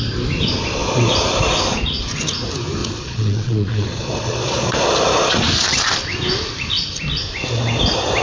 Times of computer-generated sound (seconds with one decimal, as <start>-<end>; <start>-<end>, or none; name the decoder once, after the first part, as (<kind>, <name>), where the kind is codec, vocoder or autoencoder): 2.8-4.8 (vocoder, Vocos)